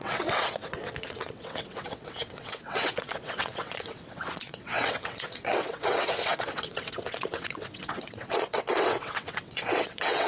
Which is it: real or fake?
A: fake